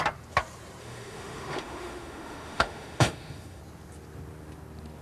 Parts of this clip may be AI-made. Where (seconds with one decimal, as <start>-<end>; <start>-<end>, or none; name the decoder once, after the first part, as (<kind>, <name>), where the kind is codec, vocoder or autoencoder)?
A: 0.8-3.6 (autoencoder, DAC-VAE)